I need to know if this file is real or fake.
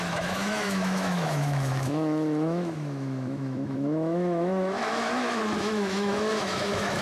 fake